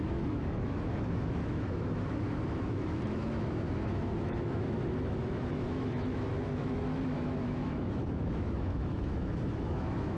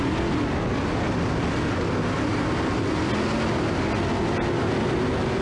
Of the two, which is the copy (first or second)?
first